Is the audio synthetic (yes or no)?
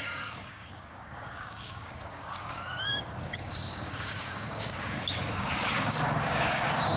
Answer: yes